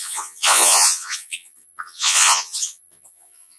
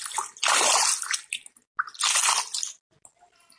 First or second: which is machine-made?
first